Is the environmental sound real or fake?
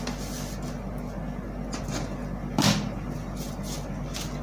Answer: real